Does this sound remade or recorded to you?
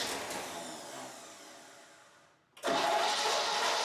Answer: recorded